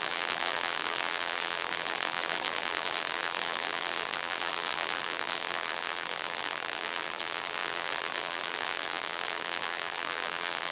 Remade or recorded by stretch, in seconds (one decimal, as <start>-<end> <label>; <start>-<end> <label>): 0.0-10.7 remade